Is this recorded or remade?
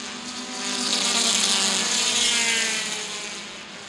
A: recorded